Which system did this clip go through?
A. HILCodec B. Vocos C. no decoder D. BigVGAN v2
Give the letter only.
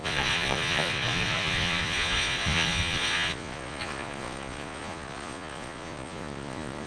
B